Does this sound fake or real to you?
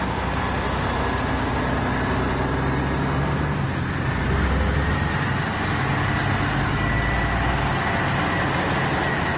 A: real